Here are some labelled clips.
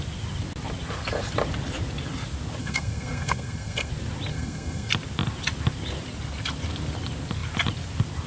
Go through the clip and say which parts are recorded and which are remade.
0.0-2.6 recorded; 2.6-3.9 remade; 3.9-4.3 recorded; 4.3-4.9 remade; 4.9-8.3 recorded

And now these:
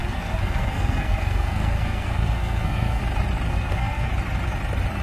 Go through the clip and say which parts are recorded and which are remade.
0.0-3.0 remade; 3.0-3.5 recorded; 3.5-4.1 remade; 4.1-5.0 recorded

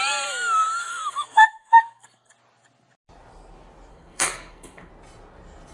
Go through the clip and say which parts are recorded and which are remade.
0.0-0.8 recorded; 0.8-2.3 remade; 2.3-3.9 recorded; 3.9-4.9 remade; 4.9-5.7 recorded

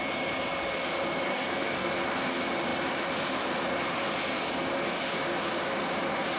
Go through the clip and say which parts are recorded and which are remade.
0.0-1.3 recorded; 1.3-1.9 remade; 1.9-6.4 recorded